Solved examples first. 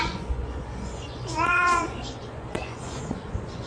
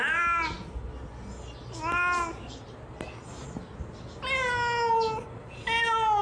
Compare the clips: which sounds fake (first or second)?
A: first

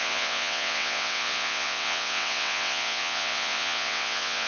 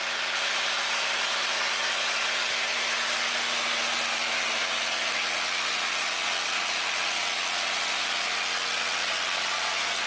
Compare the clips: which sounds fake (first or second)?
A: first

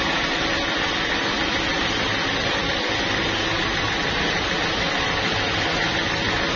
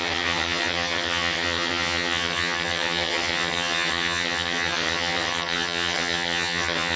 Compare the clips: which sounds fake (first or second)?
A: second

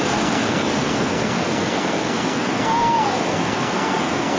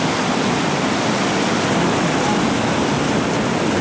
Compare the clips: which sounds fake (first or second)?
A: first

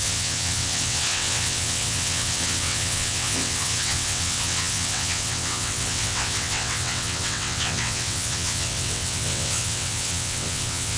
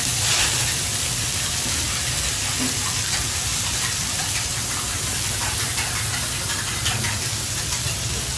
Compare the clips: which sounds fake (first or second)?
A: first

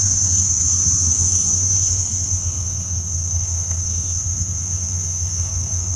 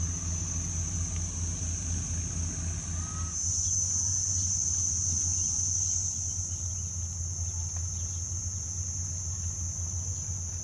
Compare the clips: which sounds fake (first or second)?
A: first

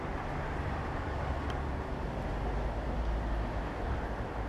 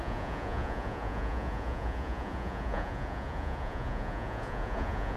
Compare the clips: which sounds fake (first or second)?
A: second